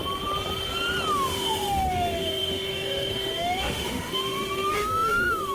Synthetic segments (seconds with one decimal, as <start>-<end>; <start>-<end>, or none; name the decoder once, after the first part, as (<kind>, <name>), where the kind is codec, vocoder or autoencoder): 1.1-5.5 (autoencoder, DAC-VAE)